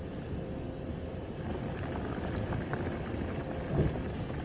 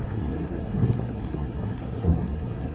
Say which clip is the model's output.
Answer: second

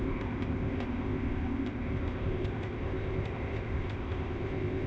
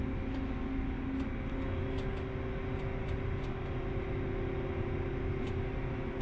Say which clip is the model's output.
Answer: first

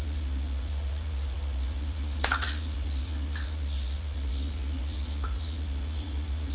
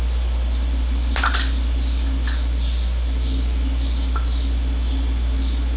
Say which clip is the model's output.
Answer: first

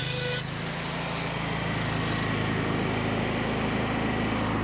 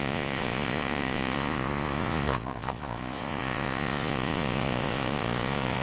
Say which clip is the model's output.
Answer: second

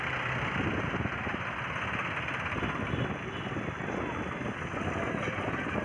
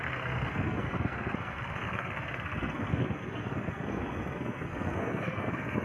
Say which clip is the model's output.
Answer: second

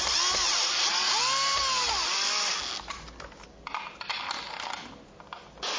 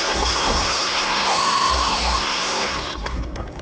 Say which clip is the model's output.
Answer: second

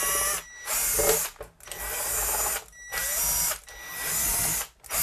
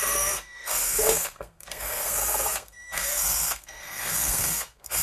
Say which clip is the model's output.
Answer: second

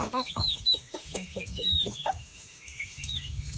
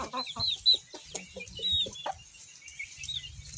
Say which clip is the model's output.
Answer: first